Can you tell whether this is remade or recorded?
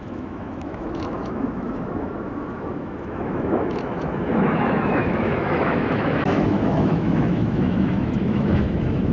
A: remade